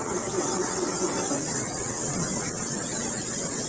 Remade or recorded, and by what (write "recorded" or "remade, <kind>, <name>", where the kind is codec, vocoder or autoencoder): remade, vocoder, WaveNeXt